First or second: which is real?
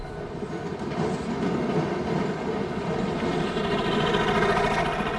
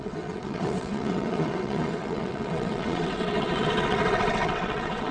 first